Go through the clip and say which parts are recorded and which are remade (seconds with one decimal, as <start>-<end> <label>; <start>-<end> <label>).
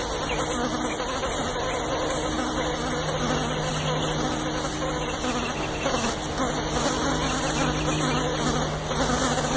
0.0-9.6 recorded